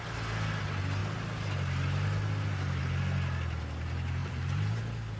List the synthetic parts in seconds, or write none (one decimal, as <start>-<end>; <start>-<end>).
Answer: 4.2-4.8